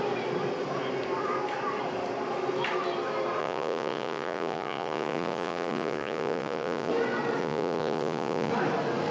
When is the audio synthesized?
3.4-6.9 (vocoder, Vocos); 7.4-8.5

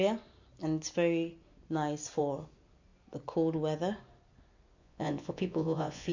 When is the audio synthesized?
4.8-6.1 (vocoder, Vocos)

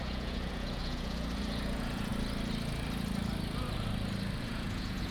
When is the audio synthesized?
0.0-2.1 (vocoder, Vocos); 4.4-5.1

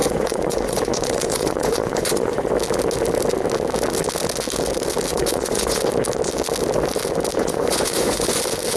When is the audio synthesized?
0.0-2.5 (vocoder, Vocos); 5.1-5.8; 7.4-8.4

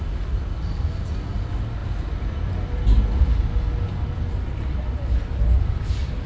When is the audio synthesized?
none

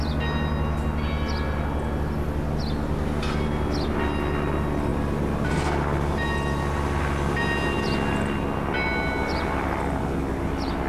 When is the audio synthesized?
none